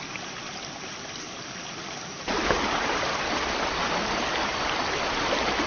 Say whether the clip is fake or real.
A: real